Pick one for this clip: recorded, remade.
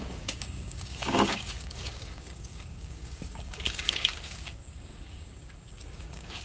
remade